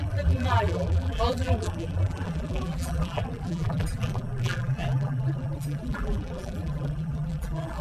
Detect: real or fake fake